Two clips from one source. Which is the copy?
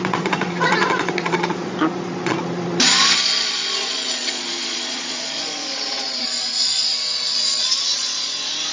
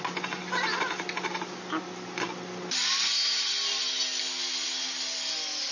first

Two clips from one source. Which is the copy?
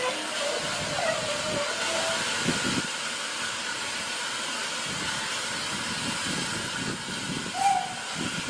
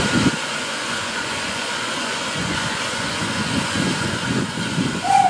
second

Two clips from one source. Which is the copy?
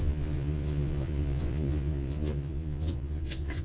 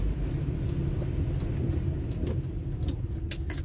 first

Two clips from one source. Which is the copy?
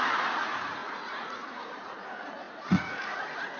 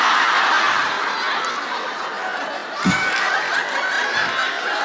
first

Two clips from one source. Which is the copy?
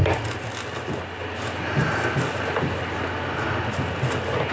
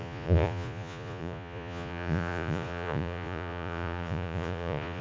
second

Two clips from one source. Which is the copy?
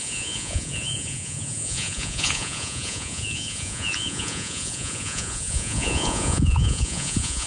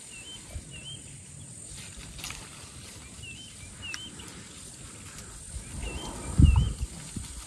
first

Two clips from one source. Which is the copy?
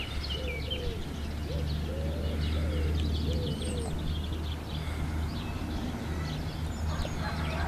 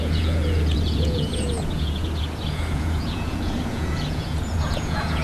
second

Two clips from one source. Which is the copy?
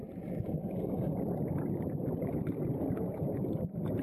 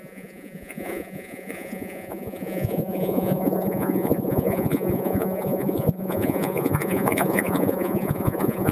second